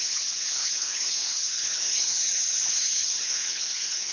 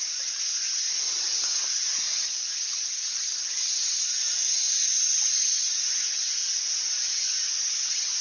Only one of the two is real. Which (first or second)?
second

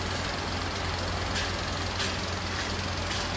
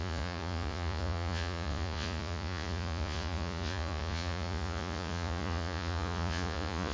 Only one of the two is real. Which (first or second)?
first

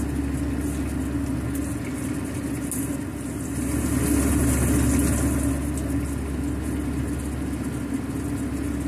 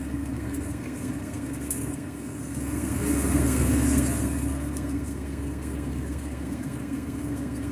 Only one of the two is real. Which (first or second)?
first